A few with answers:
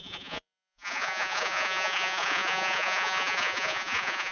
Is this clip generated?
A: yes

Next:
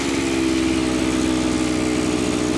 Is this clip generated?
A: no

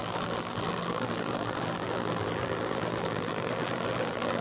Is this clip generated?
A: yes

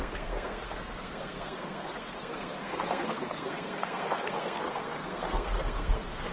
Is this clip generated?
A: yes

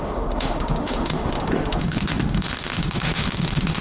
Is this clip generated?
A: yes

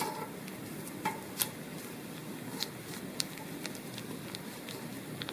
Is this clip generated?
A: no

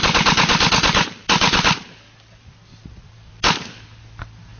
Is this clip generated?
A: no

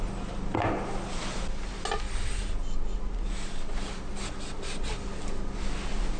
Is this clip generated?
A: no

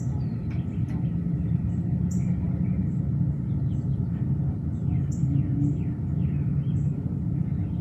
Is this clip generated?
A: no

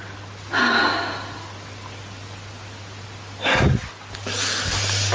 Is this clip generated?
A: no